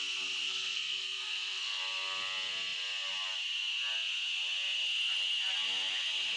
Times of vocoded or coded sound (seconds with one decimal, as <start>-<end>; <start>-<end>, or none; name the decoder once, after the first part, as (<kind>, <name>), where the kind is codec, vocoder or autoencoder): 0.4-1.8 (codec, SNAC)